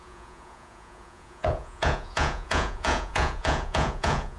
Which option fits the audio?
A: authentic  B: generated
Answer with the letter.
B